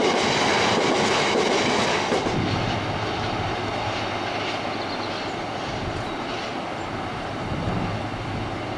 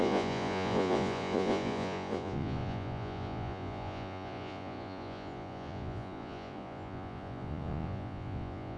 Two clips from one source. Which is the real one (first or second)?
first